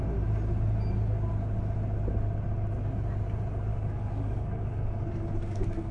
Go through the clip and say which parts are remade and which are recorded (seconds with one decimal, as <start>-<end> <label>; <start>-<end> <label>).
0.0-3.7 recorded; 3.7-5.9 remade